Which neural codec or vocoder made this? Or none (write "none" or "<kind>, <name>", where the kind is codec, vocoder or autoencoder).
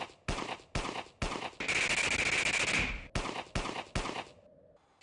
none